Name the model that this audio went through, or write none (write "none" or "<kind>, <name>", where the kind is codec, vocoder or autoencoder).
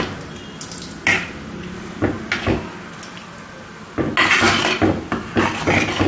none